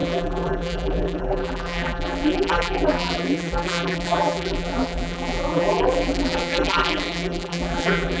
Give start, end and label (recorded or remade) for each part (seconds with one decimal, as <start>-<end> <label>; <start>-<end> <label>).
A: 0.0-8.2 remade